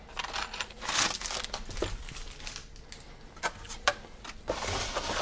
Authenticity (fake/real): real